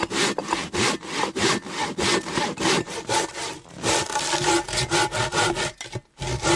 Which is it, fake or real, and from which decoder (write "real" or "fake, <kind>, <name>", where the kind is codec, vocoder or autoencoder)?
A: real